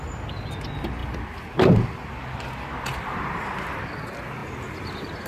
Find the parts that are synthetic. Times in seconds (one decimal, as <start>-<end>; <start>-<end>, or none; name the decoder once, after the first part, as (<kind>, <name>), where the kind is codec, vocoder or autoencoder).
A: 1.0-3.8 (vocoder, BigVGAN v2)